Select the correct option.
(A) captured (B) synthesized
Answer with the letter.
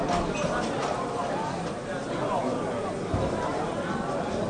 A